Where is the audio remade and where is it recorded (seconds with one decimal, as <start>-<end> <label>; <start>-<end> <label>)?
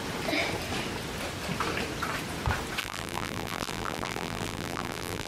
0.0-2.8 recorded; 2.8-5.3 remade